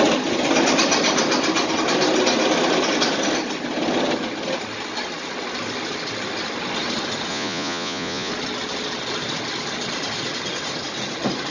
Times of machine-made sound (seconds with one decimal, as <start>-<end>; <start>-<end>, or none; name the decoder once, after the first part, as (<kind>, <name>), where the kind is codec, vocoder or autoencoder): 7.3-8.3 (vocoder, Vocos)